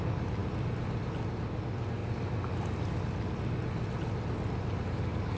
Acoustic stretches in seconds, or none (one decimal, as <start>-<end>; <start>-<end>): 0.0-5.4